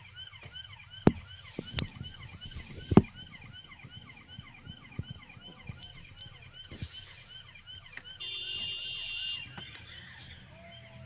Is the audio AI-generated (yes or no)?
no